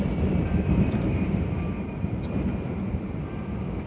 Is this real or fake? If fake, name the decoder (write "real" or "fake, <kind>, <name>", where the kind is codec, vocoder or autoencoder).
fake, vocoder, BigVGAN v2